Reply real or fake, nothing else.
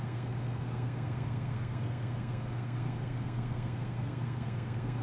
fake